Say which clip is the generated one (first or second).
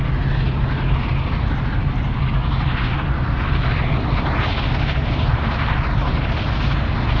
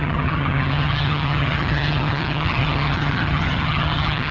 second